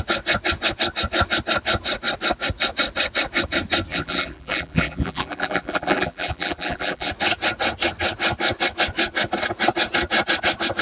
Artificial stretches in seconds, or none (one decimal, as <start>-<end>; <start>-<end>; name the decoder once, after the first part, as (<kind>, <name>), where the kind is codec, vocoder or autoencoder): 3.9-7.1 (vocoder, BigVGAN v2)